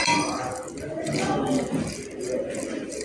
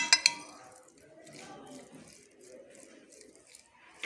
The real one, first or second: second